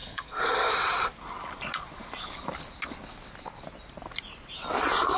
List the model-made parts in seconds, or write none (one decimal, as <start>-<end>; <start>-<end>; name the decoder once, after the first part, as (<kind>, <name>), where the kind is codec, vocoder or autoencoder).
0.0-0.7 (codec, SNAC)